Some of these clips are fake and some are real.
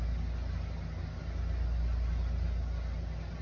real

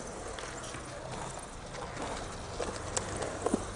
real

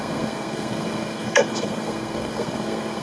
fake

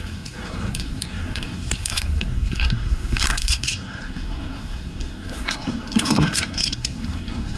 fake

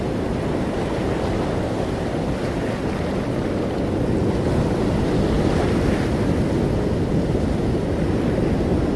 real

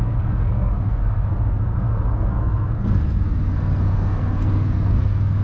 fake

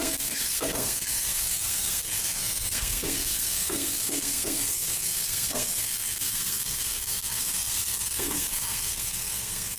fake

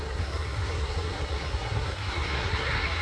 fake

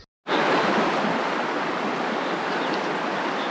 real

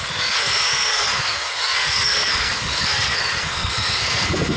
fake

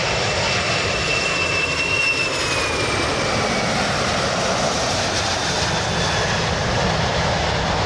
real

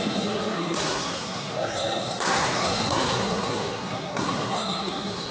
fake